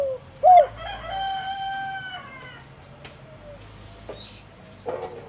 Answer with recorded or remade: recorded